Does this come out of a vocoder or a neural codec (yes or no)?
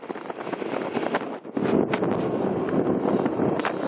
no